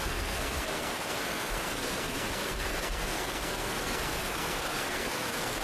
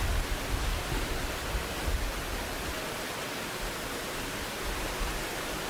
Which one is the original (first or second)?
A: second